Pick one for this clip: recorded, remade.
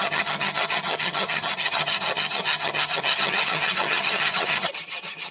remade